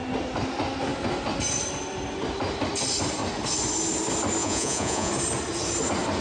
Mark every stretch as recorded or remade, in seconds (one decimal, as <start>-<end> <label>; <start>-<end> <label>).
0.0-4.4 recorded; 4.4-5.1 remade; 5.1-6.2 recorded